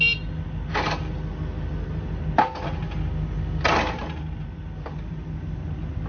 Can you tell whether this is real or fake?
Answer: real